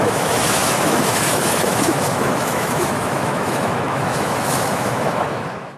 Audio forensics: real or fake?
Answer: fake